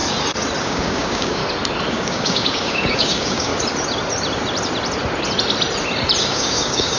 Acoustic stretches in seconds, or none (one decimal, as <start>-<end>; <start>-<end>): 0.0-0.6; 1.4-1.9; 3.5-6.3